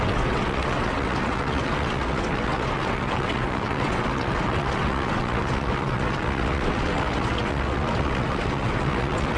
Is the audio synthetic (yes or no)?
yes